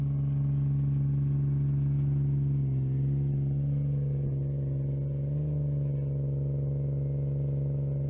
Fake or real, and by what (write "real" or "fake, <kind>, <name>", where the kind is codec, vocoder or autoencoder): real